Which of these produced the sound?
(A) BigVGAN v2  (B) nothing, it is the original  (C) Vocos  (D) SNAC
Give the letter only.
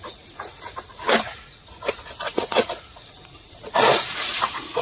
C